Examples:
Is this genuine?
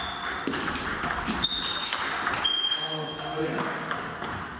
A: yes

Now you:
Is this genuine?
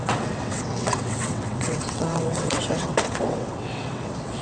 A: no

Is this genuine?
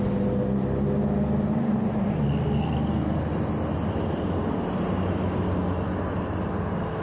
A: yes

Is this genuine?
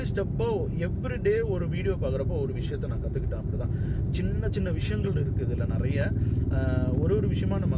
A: yes